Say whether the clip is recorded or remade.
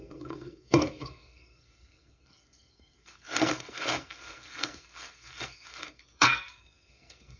remade